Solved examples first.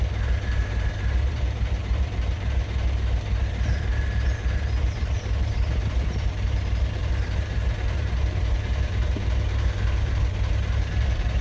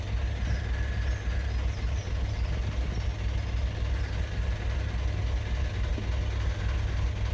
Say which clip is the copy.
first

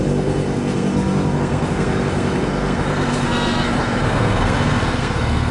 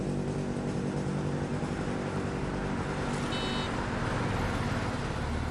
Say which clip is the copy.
first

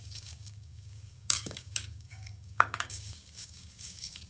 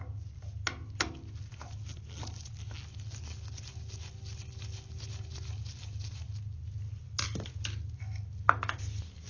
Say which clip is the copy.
first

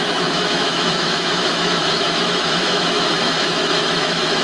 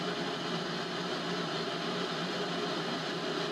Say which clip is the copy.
first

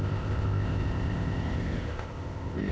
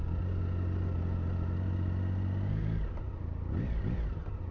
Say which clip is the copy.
first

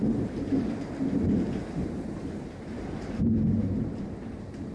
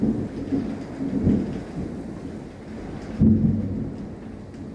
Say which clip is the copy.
first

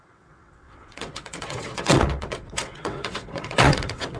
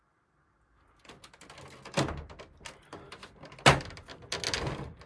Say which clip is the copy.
first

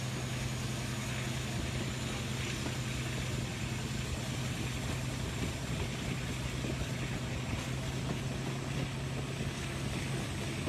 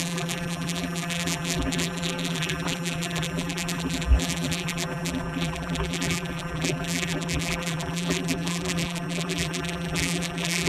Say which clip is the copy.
second